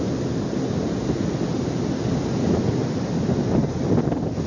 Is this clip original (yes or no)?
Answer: yes